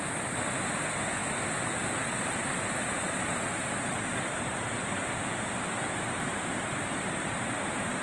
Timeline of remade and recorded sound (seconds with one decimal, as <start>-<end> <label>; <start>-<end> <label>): 0.0-8.0 recorded